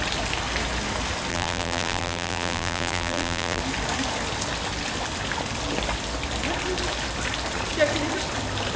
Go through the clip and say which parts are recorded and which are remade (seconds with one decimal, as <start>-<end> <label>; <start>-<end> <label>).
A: 0.0-1.3 recorded; 1.3-3.6 remade; 3.6-8.8 recorded